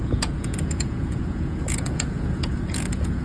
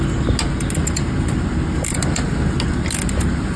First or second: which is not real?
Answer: first